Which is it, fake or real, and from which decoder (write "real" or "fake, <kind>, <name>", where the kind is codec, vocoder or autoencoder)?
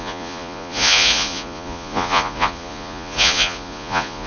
fake, vocoder, Vocos